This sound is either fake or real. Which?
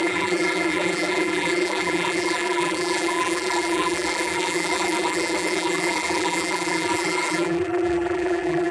fake